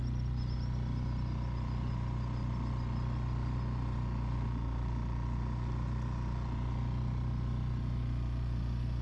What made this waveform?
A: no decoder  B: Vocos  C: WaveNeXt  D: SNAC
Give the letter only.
A